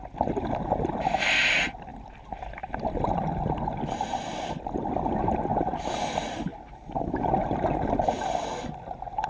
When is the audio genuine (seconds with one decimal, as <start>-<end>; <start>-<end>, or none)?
0.0-9.3